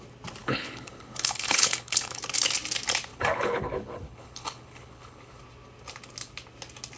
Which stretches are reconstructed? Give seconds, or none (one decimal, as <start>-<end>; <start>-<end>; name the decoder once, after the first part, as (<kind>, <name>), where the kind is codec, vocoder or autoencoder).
0.4-2.2 (codec, HILCodec); 3.1-5.4